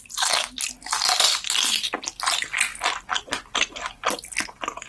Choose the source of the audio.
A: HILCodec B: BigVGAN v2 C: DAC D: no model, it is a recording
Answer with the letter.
D